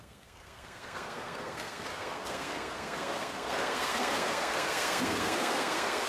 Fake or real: fake